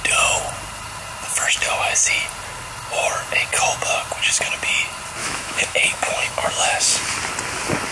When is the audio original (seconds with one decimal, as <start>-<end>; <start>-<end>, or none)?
0.0-5.2; 6.9-7.9